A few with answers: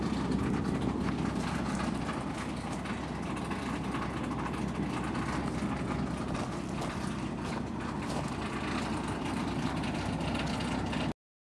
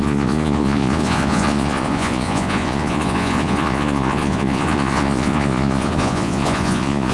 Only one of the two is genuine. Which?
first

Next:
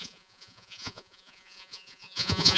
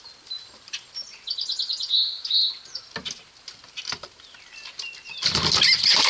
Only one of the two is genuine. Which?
second